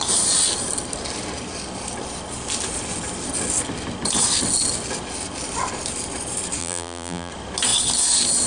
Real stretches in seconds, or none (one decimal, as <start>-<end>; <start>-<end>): 0.0-6.6; 7.3-8.5